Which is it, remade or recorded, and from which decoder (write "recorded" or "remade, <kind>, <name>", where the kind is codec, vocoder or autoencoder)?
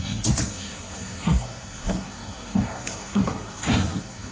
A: remade, codec, SNAC